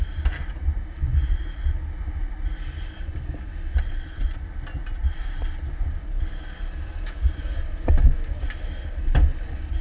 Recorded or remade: recorded